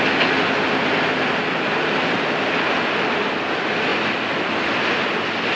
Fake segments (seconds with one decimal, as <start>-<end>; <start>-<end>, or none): none